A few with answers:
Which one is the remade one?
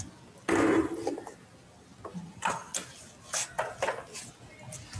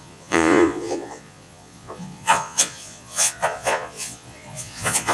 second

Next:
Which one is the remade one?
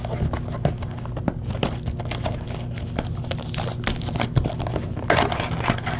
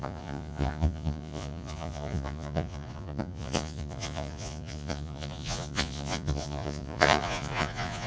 second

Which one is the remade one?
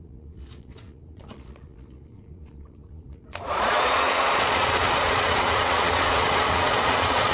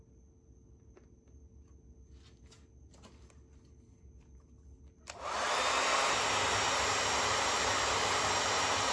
first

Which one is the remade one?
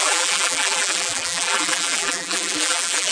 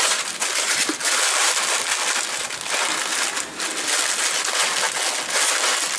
first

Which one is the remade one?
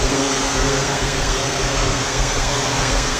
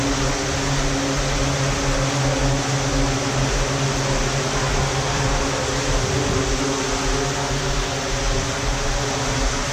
first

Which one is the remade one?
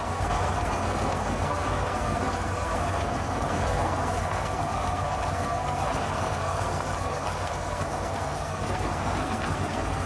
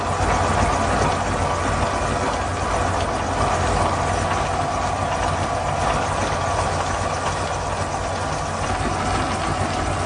first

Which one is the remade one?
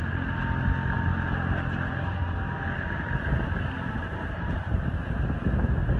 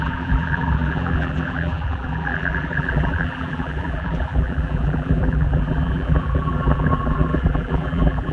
second